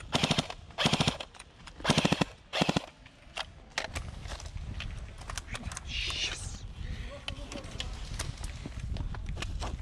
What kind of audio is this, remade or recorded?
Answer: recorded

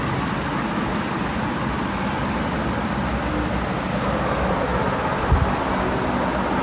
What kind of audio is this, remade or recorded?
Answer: recorded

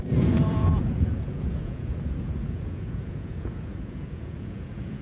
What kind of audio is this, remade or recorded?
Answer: remade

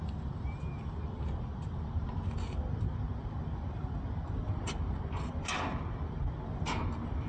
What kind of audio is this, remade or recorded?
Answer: recorded